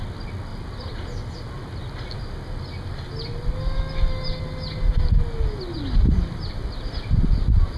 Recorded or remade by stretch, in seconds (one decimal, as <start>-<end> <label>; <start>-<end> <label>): 0.0-7.8 recorded